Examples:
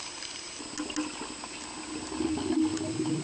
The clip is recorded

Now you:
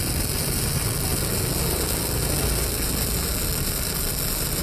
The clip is recorded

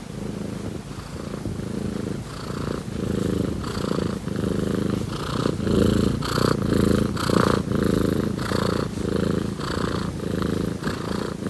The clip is recorded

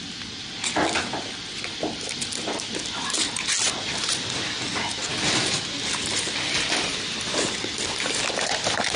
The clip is recorded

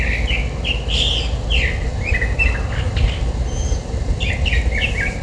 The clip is recorded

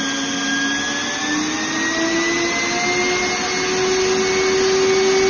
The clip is recorded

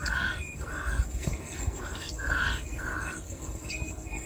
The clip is remade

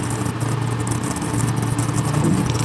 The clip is recorded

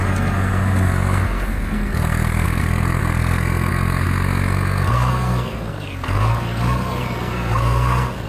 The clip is remade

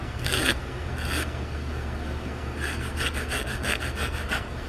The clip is remade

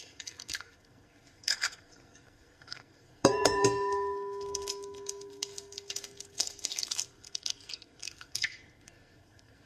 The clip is remade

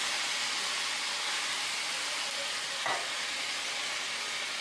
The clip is recorded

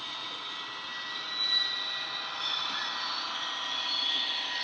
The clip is recorded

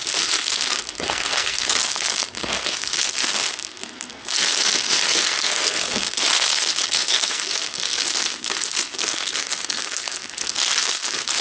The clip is remade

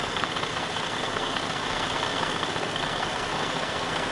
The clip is remade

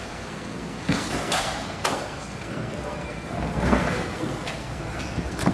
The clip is remade